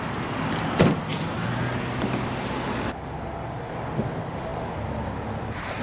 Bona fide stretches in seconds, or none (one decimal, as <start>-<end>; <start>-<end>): 0.0-5.8